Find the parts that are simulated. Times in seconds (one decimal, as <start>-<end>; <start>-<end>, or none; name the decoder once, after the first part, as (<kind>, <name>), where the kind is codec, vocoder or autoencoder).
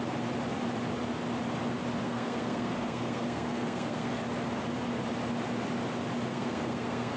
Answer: 2.0-4.2 (codec, SNAC); 6.3-7.2